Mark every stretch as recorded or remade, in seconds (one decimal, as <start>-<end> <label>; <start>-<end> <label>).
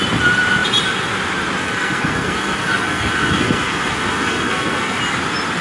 0.0-1.6 recorded; 1.6-5.0 remade; 5.0-5.6 recorded